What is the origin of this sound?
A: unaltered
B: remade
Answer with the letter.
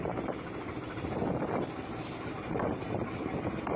B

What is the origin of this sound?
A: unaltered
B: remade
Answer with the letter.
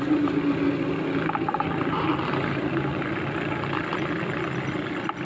A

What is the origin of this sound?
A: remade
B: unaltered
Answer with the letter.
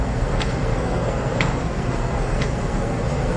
A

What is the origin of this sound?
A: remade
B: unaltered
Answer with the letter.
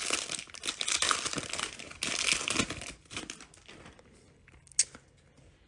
B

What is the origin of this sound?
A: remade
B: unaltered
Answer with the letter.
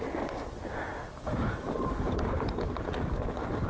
B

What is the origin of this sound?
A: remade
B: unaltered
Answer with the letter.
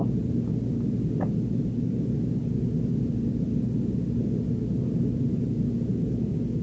B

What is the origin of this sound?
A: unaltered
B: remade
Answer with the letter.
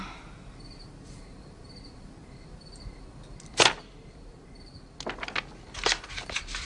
A